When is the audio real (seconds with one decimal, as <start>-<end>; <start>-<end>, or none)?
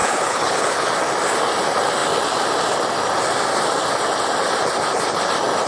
0.9-5.7